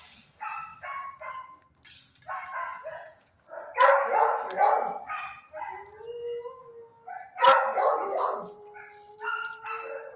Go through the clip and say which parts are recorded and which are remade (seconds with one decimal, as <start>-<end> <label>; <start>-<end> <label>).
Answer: 0.0-2.7 recorded; 2.7-3.4 remade; 3.4-10.2 recorded